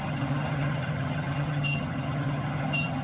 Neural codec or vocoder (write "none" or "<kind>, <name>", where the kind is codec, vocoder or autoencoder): vocoder, HiFi-GAN